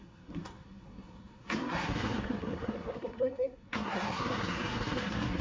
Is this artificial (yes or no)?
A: yes